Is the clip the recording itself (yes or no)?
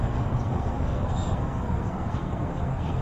no